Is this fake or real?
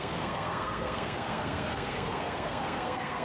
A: fake